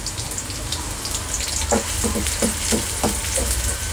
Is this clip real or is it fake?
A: fake